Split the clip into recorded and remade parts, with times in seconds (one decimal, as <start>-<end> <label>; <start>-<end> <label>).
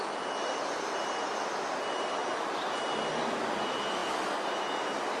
0.0-5.2 recorded